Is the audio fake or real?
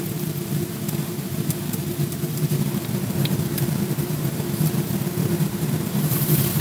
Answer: fake